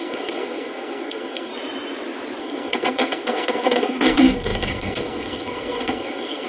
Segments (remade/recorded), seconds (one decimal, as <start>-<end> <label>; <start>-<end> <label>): 0.0-1.5 remade; 1.5-2.4 recorded; 2.4-6.5 remade